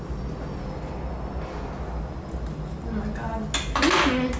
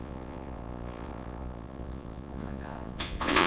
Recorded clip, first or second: first